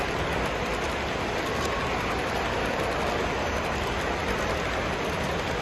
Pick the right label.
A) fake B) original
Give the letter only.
B